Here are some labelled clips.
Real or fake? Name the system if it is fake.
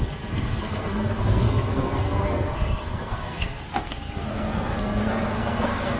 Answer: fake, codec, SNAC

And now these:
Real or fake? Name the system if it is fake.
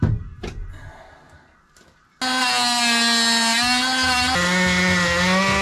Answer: real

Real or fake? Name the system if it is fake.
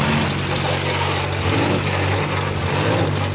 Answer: real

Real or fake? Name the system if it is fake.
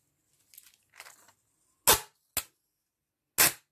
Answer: real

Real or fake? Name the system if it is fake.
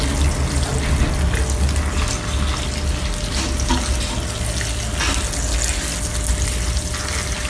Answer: real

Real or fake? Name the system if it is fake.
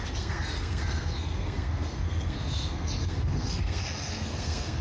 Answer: fake, codec, SNAC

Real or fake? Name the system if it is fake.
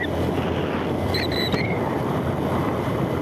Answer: real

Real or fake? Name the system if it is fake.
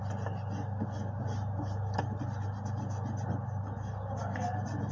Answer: real